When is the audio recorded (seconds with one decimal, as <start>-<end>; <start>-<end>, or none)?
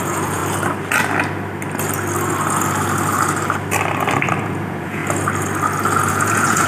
0.4-4.4; 5.0-6.1